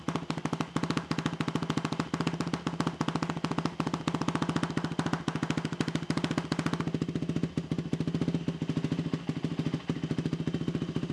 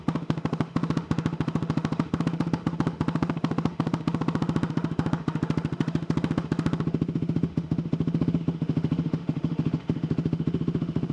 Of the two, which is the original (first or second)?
first